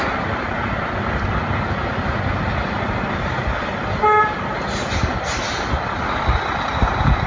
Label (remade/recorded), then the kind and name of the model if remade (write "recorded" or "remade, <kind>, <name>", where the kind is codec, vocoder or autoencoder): recorded